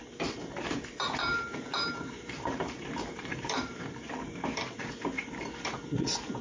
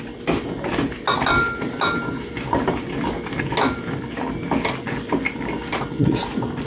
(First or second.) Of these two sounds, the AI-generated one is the first